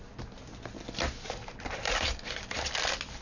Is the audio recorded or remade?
recorded